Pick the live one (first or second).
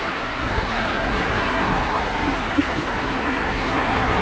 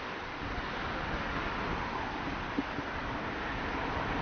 second